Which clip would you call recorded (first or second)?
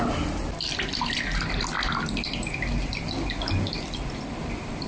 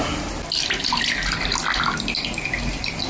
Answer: second